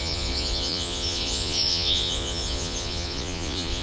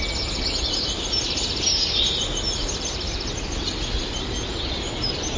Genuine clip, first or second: second